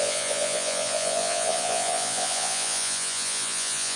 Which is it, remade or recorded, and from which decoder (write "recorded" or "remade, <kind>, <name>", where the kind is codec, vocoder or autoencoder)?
remade, vocoder, Vocos